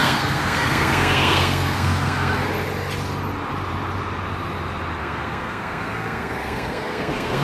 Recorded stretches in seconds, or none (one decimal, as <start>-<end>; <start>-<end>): 2.4-5.0